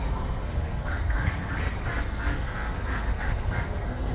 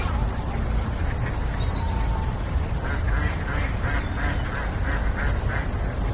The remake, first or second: first